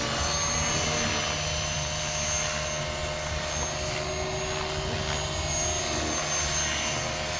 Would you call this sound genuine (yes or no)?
yes